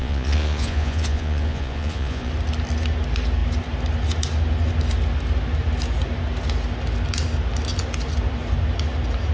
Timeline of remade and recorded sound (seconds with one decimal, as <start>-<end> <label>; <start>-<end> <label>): 0.0-2.3 remade; 2.3-9.3 recorded